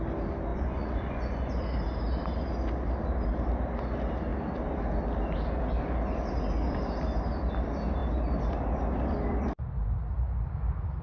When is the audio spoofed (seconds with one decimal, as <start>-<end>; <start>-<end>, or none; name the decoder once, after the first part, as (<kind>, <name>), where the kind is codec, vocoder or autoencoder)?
0.5-1.5 (vocoder, Vocos)